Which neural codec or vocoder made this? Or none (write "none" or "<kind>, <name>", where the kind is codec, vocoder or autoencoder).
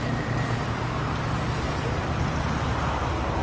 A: none